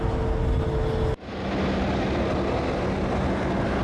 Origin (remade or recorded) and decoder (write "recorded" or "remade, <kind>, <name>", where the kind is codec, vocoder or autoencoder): recorded